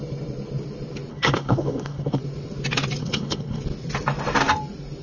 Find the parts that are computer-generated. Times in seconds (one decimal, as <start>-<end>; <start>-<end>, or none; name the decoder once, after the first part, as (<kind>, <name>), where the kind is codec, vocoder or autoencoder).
1.1-2.2 (codec, HILCodec); 3.0-3.6